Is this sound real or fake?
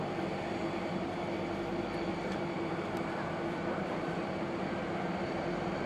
real